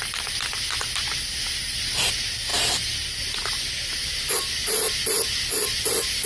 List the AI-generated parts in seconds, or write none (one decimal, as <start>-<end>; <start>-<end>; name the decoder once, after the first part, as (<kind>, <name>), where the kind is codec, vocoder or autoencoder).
none